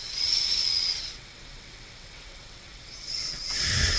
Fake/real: fake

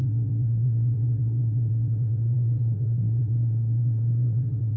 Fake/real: fake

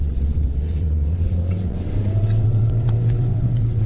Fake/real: fake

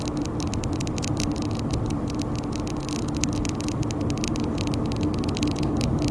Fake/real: real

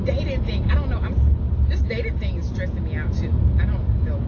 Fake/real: real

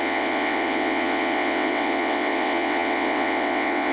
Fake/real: fake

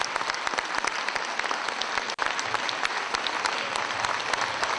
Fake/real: real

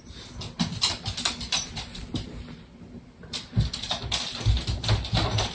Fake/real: real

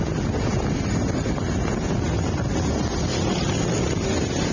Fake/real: real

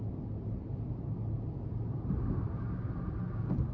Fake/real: real